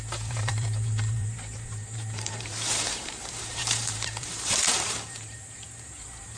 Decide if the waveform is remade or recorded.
remade